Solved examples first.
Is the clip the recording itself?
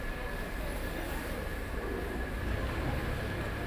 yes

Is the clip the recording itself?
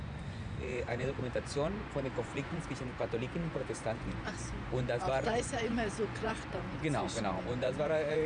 no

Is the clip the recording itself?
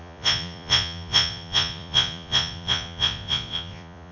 no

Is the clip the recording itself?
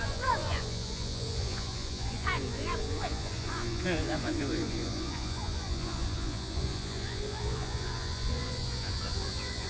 no